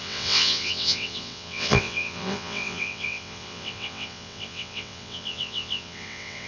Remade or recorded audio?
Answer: remade